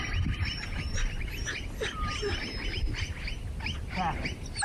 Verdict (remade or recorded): recorded